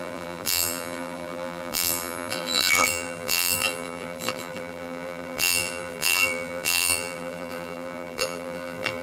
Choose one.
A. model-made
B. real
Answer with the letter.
A